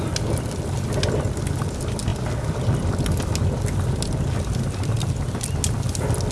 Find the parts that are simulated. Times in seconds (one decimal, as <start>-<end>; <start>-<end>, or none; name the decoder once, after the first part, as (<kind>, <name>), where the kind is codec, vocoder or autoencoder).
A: none